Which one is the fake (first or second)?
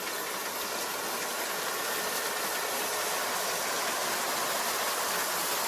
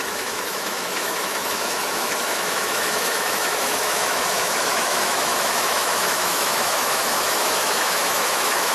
second